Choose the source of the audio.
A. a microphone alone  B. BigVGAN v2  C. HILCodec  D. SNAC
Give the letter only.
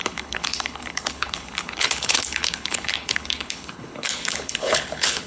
C